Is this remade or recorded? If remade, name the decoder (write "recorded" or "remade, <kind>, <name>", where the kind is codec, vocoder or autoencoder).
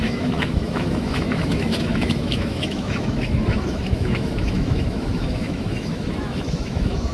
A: remade, autoencoder, DAC-VAE